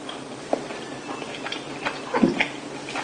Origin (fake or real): real